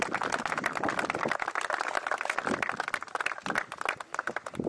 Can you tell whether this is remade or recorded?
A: recorded